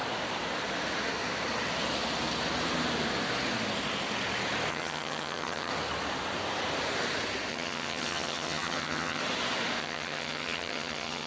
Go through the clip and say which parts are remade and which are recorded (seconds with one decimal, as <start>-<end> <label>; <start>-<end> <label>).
0.0-4.7 recorded; 4.7-5.7 remade; 5.7-7.5 recorded; 7.5-9.2 remade; 9.2-9.8 recorded; 9.8-11.3 remade